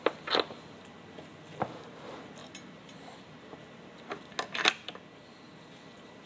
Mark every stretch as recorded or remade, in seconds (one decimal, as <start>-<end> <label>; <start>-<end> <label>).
0.0-2.4 recorded; 2.4-3.5 remade; 3.5-6.3 recorded